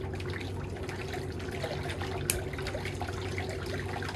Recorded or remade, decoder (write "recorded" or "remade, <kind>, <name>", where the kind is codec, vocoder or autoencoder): recorded